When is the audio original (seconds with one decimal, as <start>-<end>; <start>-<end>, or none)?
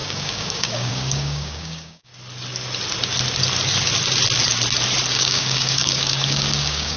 2.1-5.1